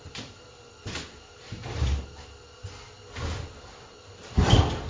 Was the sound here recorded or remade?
recorded